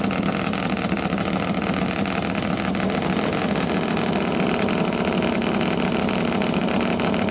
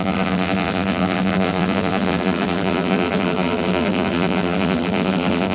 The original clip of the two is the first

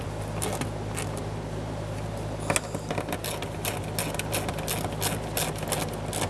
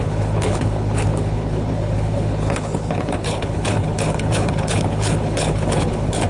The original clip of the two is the first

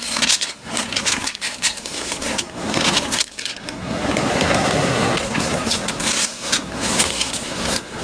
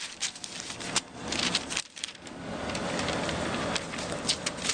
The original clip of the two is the second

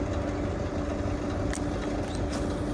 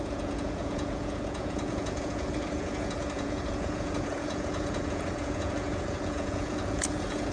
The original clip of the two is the first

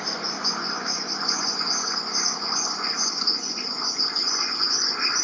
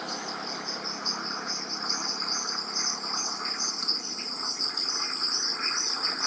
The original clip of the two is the second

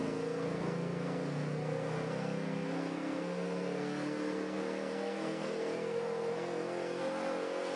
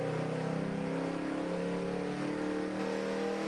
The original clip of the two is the second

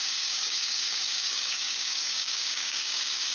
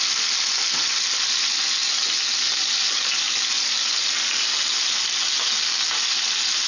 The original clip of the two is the second